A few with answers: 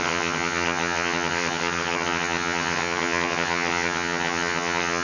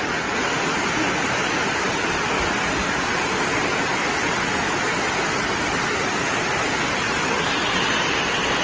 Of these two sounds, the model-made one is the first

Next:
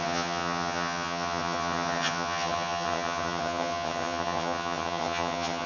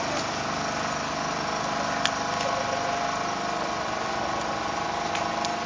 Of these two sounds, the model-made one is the first